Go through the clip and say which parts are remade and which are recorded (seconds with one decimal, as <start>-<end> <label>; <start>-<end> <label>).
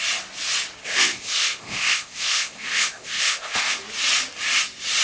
0.0-0.8 recorded; 0.8-3.8 remade; 3.8-5.0 recorded